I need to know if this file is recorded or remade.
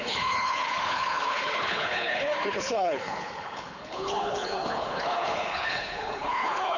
remade